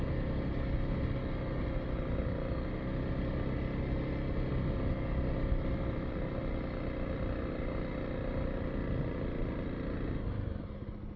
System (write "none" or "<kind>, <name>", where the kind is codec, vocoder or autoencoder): none